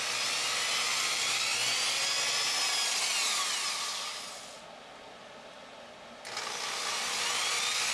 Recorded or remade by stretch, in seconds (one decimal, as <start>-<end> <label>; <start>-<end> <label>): 0.0-7.9 recorded